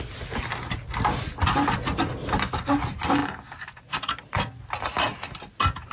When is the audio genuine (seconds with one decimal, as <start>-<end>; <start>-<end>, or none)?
0.0-5.9